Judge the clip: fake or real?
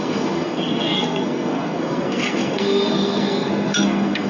fake